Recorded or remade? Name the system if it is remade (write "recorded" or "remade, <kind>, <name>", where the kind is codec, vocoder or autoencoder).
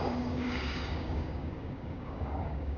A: remade, codec, DAC